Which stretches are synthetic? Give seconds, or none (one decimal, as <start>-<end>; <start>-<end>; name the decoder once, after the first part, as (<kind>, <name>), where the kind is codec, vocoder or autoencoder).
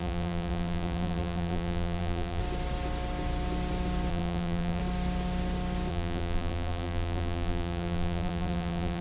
0.0-2.4 (vocoder, BigVGAN v2); 4.1-4.8; 5.9-9.0